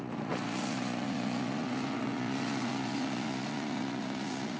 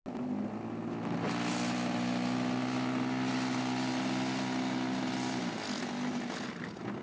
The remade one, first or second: first